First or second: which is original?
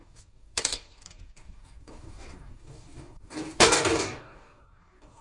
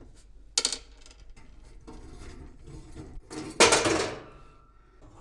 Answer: second